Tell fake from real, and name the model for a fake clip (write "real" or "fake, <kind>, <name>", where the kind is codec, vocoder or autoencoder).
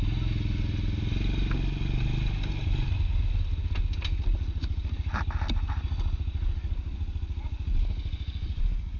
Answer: real